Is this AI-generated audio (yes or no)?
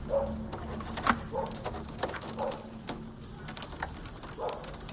no